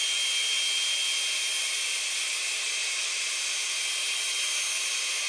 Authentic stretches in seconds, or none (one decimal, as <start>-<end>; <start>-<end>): 0.0-2.8; 3.3-5.3